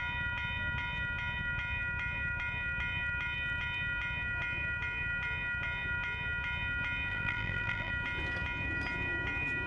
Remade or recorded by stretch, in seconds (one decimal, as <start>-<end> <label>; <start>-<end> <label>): 0.0-7.1 recorded; 7.1-7.9 remade; 7.9-9.7 recorded